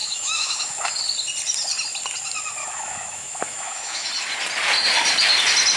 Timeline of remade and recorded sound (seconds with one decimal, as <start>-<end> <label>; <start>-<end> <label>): 0.0-1.0 remade; 1.0-2.6 recorded; 2.6-4.1 remade; 4.1-5.8 recorded